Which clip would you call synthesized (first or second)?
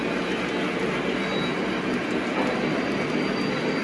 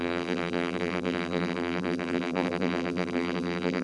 second